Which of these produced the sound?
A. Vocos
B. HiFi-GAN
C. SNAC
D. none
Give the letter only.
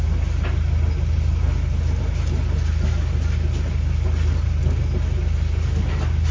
D